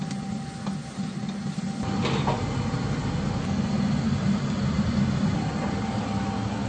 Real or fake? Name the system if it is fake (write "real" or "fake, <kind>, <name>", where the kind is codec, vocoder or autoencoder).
real